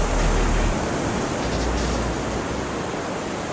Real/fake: real